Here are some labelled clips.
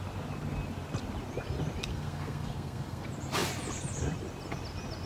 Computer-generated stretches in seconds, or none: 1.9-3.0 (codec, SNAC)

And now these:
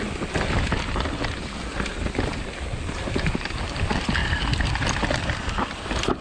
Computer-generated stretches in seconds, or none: none